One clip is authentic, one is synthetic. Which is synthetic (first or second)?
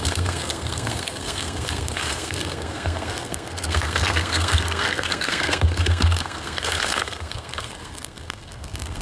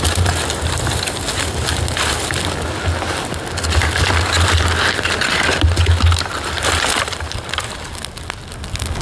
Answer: first